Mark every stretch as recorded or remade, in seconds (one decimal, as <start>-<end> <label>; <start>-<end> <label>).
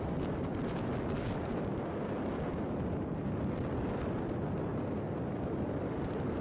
0.0-4.7 recorded; 4.7-6.0 remade; 6.0-6.4 recorded